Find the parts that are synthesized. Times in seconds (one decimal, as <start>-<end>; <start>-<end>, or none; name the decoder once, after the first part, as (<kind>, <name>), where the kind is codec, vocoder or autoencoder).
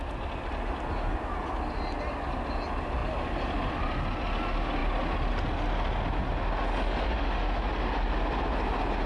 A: none